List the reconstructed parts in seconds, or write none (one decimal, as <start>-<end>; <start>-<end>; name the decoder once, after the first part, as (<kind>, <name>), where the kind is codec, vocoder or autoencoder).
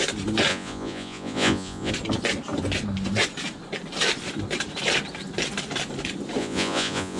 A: 0.5-1.9 (vocoder, Vocos); 6.4-7.2